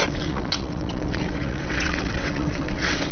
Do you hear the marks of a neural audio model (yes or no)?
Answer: yes